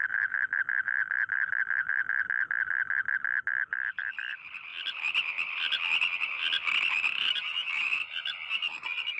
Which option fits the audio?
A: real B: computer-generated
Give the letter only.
A